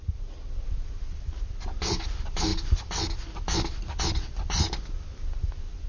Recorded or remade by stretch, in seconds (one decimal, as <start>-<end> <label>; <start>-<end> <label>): 0.0-5.9 recorded